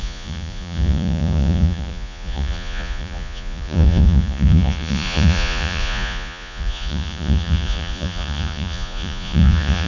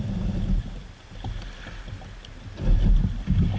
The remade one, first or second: first